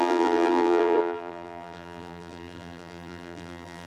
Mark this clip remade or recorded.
remade